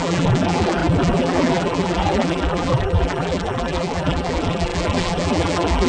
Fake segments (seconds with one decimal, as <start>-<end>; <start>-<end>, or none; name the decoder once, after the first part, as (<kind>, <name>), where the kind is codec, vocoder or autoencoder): 0.0-5.9 (vocoder, BigVGAN v2)